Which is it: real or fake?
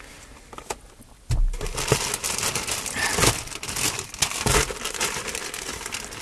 real